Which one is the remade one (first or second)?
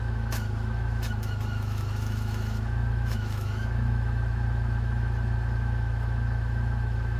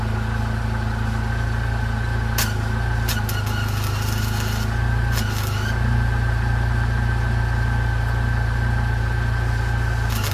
first